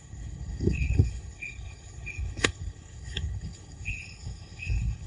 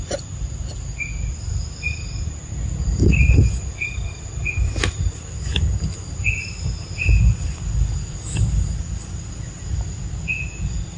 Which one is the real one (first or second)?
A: second